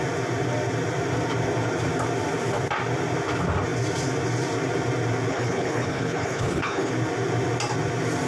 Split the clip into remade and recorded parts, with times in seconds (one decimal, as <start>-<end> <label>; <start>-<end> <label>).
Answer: 0.0-5.3 recorded; 5.3-6.9 remade; 6.9-8.3 recorded